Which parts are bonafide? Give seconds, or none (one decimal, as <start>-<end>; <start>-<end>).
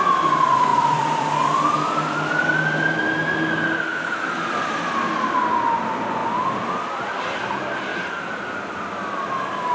0.0-0.7; 1.3-3.9; 5.1-7.9